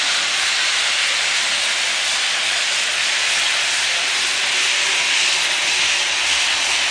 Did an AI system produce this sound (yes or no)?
no